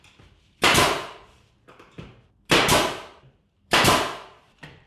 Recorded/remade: remade